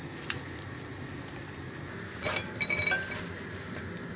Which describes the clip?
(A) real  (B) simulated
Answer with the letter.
A